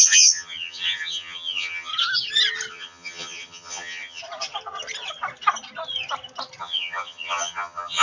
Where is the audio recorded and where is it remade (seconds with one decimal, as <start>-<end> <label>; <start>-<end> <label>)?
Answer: 0.0-1.9 remade; 1.9-2.7 recorded; 2.7-4.2 remade; 4.2-6.6 recorded; 6.6-8.0 remade